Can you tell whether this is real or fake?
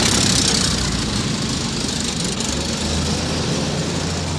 real